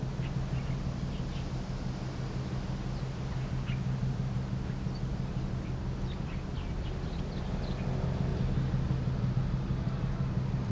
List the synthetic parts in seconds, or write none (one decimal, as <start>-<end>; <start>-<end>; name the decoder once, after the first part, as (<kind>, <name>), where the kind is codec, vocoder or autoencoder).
none